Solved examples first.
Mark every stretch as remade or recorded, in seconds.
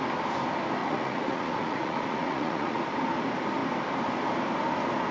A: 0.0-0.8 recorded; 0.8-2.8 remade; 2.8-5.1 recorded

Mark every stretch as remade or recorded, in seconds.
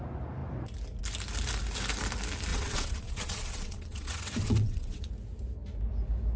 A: 0.0-2.5 recorded; 2.5-5.1 remade; 5.1-6.4 recorded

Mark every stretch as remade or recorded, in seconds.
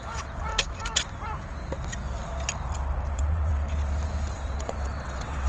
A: 0.0-0.5 remade; 0.5-3.1 recorded; 3.1-3.5 remade; 3.5-4.3 recorded; 4.3-5.5 remade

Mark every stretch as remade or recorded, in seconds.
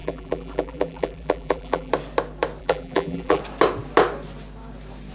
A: 0.0-1.9 remade; 1.9-2.6 recorded; 2.6-3.4 remade; 3.4-5.1 recorded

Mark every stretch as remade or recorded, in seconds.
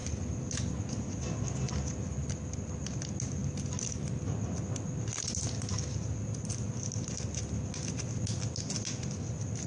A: 0.0-9.7 recorded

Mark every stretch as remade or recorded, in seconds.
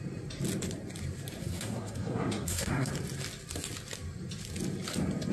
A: 0.0-1.4 recorded; 1.4-2.9 remade; 2.9-5.3 recorded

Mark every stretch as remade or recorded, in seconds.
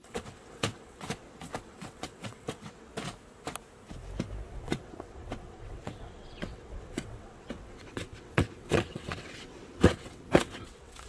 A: 0.0-2.9 remade; 2.9-4.5 recorded; 4.5-11.1 remade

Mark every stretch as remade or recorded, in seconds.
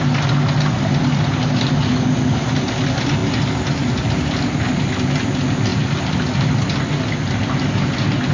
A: 0.0-8.3 recorded